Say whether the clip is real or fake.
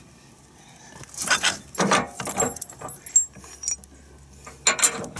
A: real